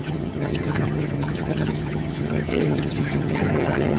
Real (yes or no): no